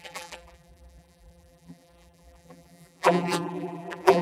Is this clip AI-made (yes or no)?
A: yes